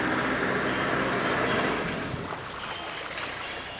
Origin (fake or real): real